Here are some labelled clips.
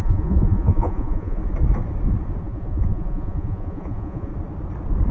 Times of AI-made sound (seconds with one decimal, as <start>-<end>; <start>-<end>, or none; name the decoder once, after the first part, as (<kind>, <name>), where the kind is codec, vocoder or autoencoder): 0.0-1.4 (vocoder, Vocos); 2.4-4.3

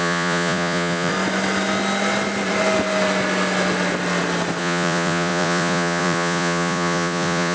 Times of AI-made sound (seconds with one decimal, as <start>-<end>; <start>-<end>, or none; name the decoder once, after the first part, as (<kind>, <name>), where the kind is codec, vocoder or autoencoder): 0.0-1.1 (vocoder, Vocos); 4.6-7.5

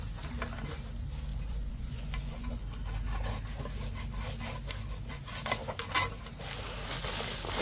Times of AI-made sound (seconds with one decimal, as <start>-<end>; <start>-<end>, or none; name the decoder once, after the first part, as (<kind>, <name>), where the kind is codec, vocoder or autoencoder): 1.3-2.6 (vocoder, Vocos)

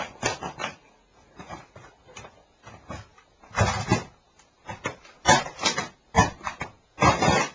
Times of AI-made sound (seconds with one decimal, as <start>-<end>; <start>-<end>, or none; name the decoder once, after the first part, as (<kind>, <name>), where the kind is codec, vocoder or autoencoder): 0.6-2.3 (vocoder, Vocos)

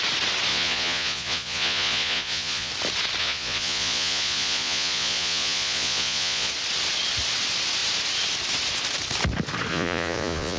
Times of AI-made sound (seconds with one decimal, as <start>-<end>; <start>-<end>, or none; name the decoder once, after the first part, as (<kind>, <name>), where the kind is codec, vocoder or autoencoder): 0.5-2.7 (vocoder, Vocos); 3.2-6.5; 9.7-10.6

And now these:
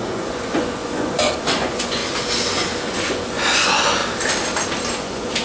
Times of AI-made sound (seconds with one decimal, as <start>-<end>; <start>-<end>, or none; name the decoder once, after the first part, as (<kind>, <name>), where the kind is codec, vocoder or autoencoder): 0.0-2.0 (vocoder, Vocos); 2.8-4.0; 5.0-5.4

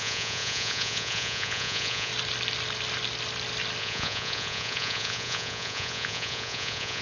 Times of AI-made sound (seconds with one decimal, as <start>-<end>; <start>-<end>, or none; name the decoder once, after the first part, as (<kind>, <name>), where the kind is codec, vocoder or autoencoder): 0.0-2.1 (vocoder, Vocos); 3.8-7.0